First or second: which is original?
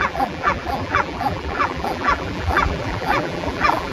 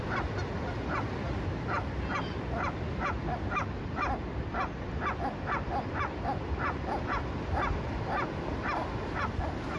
second